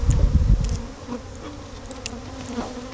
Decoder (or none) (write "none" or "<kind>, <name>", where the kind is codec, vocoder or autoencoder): none